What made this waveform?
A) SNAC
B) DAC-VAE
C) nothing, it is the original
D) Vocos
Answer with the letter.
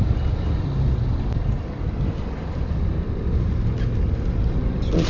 C